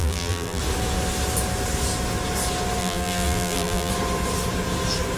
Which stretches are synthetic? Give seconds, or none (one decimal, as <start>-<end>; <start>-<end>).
0.0-0.6; 2.8-3.9